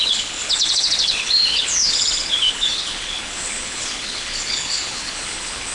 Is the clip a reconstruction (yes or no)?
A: yes